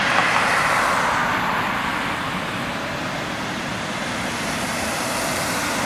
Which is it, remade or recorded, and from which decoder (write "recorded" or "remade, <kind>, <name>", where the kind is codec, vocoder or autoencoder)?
recorded